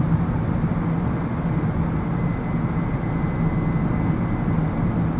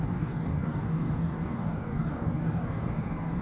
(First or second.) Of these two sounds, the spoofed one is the second